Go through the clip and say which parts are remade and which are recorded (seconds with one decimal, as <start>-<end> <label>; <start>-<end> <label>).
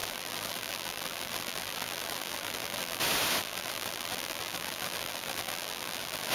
0.0-3.0 remade; 3.0-3.4 recorded; 3.4-6.3 remade